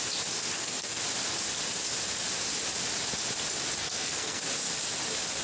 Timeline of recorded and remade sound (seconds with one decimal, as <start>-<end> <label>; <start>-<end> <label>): 0.0-0.4 recorded; 0.4-1.0 remade; 1.0-3.8 recorded; 3.8-4.4 remade; 4.4-5.4 recorded